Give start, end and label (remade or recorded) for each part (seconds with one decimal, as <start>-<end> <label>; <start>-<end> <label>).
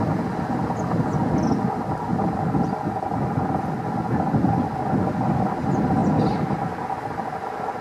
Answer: 0.0-7.8 recorded